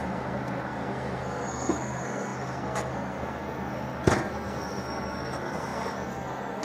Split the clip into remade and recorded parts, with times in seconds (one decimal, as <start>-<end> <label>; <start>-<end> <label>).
0.0-6.6 remade